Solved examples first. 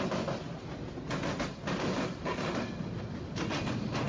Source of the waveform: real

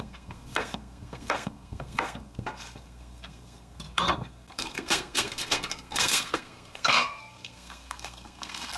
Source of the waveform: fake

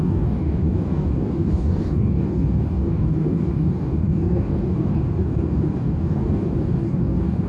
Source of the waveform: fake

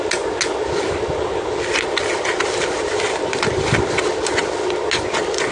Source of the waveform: real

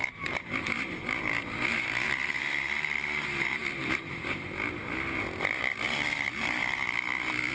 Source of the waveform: fake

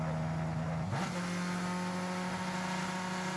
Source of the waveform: real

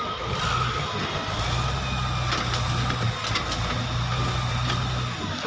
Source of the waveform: real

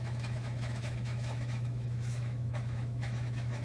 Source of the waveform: fake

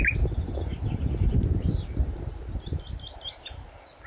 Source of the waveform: real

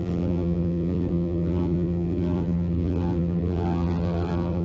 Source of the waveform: fake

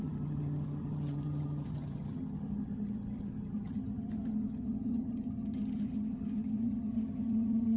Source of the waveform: fake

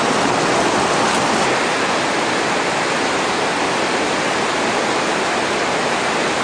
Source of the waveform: real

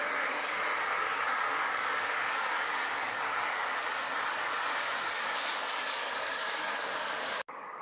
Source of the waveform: fake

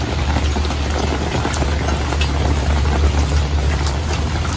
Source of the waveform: real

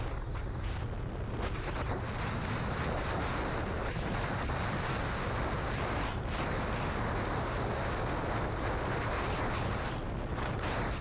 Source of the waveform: real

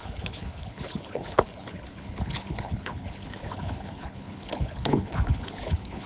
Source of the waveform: fake